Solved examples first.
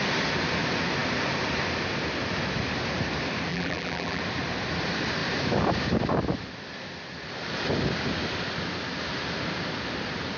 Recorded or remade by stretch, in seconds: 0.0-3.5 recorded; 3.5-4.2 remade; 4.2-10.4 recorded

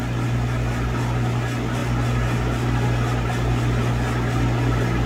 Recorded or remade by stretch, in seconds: 0.0-5.1 recorded

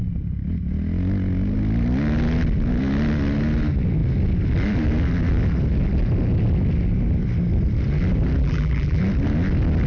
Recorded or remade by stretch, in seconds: 0.0-8.4 recorded; 8.4-9.0 remade; 9.0-9.9 recorded

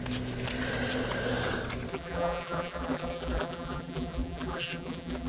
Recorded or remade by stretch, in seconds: 0.0-1.9 recorded; 1.9-5.3 remade

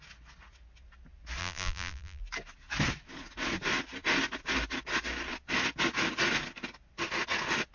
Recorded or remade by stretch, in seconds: 0.0-1.4 recorded; 1.4-2.2 remade; 2.2-7.7 recorded

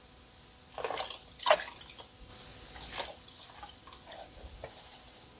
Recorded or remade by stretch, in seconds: 0.0-5.4 recorded

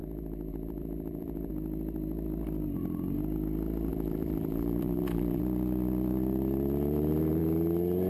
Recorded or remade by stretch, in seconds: 0.0-1.5 remade; 1.5-3.9 recorded; 3.9-5.4 remade; 5.4-8.1 recorded

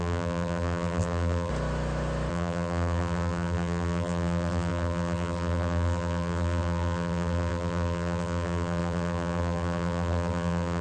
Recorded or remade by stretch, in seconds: 0.0-1.5 remade; 1.5-2.3 recorded; 2.3-10.8 remade